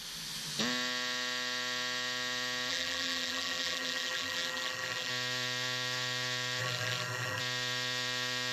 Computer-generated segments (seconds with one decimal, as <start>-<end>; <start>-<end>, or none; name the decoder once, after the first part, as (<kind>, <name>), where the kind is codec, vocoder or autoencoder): 2.7-5.1 (vocoder, BigVGAN v2); 6.6-7.4